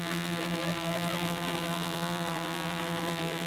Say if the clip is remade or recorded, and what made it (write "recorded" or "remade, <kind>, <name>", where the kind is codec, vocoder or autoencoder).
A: remade, vocoder, BigVGAN v2